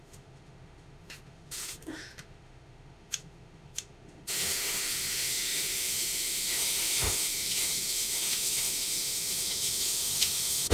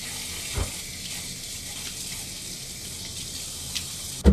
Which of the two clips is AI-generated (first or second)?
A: first